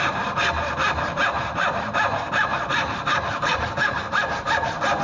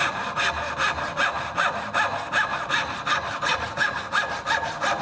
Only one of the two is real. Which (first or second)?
second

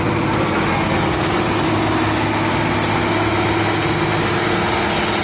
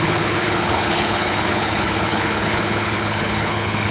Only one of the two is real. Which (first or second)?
first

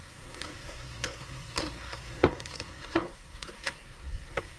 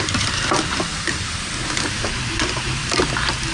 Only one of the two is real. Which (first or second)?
second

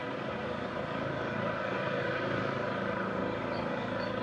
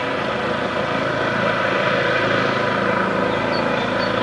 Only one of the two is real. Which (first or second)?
second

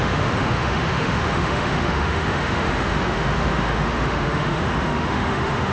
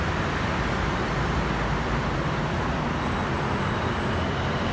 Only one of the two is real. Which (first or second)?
second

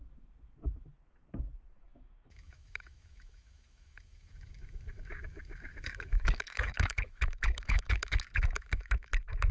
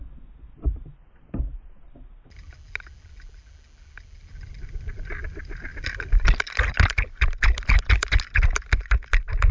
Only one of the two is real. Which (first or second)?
second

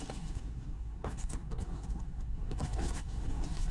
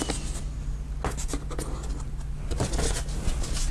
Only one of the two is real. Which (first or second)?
second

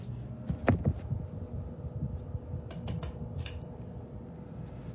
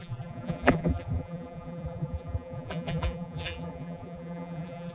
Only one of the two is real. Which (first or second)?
first